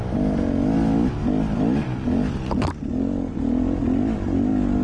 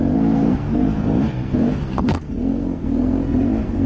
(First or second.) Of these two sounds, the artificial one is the second